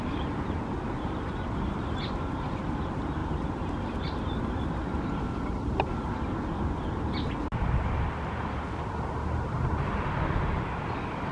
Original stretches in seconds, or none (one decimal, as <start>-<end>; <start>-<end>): 0.0-3.2; 6.2-11.3